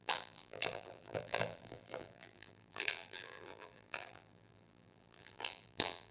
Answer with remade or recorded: remade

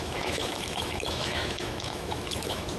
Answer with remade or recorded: remade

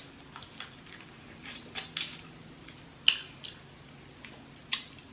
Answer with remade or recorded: recorded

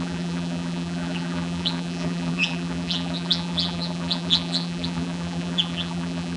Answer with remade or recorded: remade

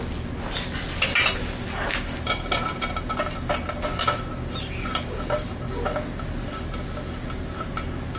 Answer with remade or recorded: recorded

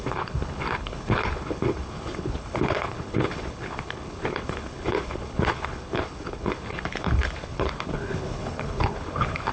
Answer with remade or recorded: remade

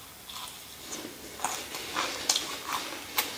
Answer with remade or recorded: recorded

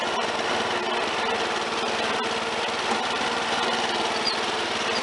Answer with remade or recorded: recorded